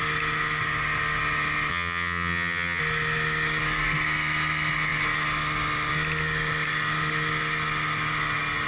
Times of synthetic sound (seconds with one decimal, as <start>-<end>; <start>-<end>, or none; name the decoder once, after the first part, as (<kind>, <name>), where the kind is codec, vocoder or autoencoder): 1.7-2.8 (vocoder, HiFi-GAN)